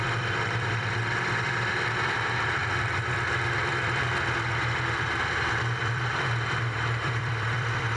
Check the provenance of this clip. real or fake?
fake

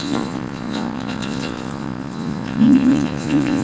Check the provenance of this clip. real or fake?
fake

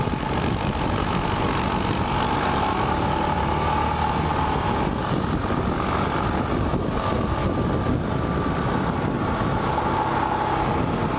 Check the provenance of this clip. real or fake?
real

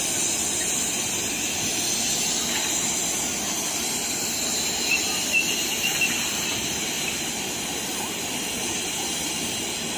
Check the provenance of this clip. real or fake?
real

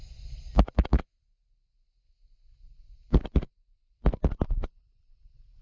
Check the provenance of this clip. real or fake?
real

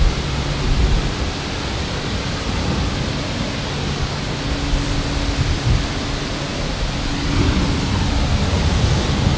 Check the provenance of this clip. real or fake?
real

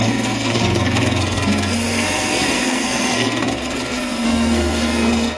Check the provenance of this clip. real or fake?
fake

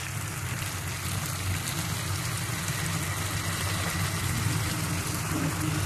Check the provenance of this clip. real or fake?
real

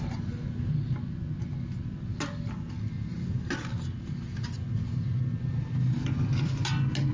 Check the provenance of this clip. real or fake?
real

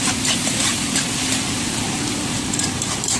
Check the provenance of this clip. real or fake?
real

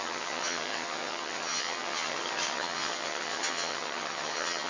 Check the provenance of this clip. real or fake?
fake